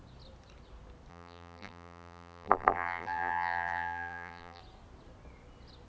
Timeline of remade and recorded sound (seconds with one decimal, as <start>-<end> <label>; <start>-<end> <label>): 0.0-1.1 recorded; 1.1-4.6 remade; 4.6-5.9 recorded